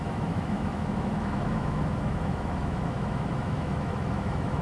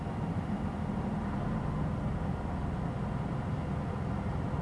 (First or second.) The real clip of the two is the second